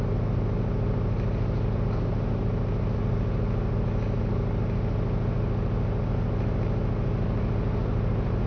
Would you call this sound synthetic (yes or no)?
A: no